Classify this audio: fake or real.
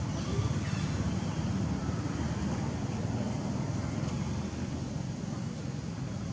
real